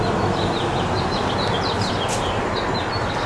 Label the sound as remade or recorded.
recorded